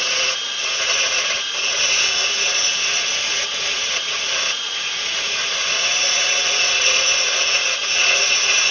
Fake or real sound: fake